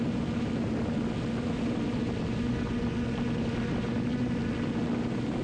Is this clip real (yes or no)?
yes